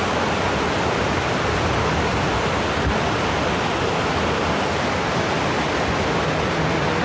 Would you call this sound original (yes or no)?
yes